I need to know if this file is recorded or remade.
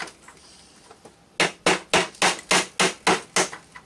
recorded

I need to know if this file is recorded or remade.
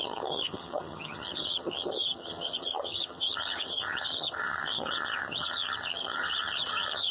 remade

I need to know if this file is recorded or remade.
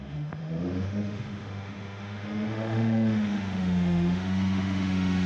remade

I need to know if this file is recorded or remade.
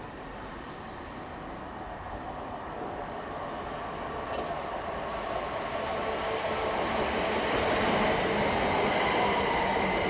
remade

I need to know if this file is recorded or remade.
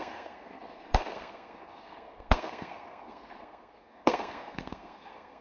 remade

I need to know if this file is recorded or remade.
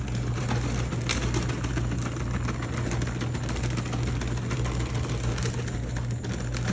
recorded